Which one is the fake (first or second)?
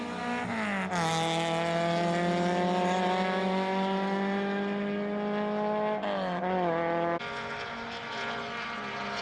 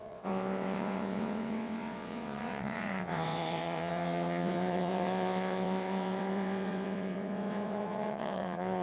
second